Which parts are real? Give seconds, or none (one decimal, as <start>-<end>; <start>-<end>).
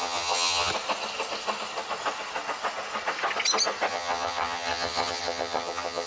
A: 0.7-3.9